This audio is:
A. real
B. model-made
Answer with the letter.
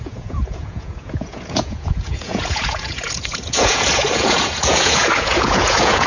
B